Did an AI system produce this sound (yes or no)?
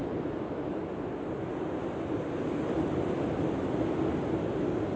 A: no